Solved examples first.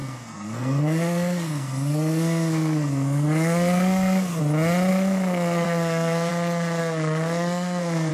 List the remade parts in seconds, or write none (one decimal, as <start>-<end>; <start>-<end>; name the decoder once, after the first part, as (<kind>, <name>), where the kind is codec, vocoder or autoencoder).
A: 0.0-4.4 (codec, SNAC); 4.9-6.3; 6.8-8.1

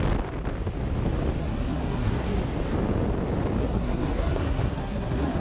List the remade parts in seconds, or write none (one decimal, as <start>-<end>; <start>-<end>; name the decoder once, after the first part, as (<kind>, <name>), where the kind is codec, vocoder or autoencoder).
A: 1.4-2.4 (codec, SNAC); 3.6-5.4

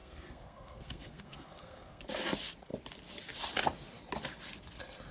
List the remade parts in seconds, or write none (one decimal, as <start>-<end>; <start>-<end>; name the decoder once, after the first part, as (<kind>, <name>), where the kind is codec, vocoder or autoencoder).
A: 0.0-2.0 (codec, SNAC)

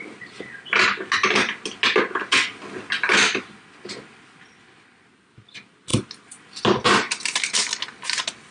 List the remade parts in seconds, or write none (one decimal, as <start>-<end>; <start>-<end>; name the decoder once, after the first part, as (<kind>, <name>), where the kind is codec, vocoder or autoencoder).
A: none

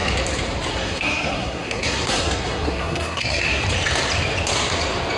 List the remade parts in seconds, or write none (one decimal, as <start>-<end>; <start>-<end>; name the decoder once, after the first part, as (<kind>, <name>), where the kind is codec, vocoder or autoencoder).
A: 0.7-3.6 (codec, SNAC)

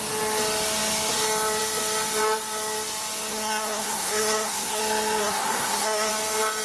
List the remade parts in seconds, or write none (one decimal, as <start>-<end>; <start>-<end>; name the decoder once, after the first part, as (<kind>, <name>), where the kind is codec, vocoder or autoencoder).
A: 3.3-4.8 (codec, SNAC); 5.2-6.1

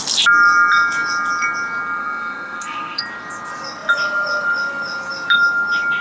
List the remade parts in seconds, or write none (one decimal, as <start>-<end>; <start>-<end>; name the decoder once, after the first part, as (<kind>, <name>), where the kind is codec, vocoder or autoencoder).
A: 2.0-3.0 (codec, SNAC)